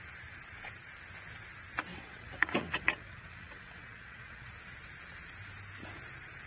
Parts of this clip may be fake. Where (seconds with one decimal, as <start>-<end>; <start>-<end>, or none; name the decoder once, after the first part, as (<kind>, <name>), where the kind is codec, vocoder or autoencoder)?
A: 1.9-4.5 (vocoder, WaveNeXt)